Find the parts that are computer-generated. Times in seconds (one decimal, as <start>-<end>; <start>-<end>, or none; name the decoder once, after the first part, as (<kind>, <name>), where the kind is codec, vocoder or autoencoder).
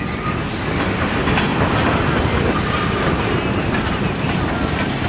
1.5-3.3 (vocoder, BigVGAN v2)